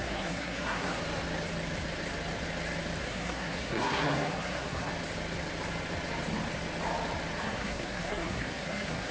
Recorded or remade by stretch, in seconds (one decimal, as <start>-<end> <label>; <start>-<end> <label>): 0.0-1.0 remade; 1.0-3.0 recorded; 3.0-4.9 remade; 4.9-7.4 recorded; 7.4-9.1 remade